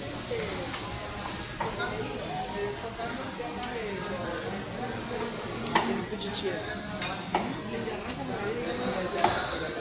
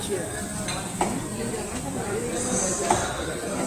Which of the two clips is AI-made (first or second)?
second